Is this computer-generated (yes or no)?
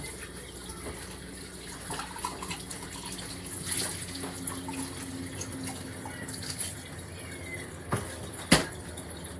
no